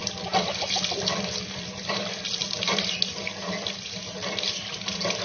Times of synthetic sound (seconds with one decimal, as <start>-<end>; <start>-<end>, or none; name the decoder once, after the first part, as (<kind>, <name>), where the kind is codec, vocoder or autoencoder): none